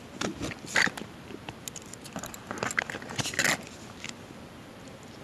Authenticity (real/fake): real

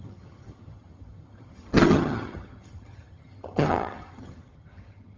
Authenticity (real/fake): fake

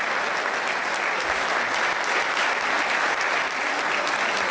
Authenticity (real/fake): real